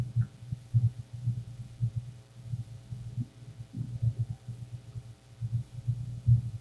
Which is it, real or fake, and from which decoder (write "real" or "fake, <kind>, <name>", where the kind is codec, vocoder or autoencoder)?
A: real